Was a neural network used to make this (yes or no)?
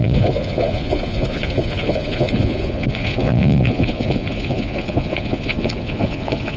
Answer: yes